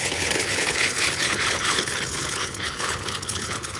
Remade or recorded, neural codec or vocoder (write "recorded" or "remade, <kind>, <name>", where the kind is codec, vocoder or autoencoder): remade, codec, HILCodec